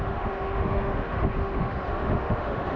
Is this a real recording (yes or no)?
no